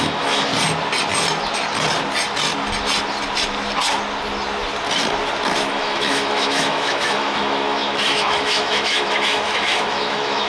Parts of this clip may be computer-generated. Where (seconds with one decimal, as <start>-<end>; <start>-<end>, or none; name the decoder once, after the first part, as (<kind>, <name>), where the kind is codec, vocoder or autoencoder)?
0.0-0.5 (autoencoder, DAC-VAE); 5.7-10.5